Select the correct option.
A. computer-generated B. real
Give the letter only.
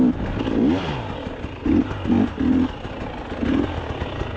B